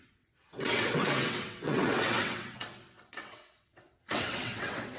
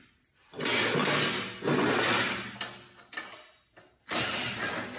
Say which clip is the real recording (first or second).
second